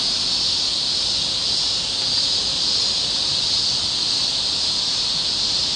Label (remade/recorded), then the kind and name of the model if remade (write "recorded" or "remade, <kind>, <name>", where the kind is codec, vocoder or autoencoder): recorded